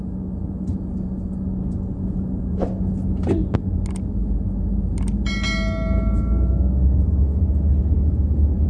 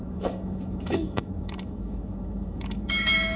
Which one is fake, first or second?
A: second